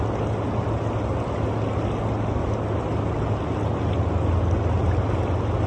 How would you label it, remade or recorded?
recorded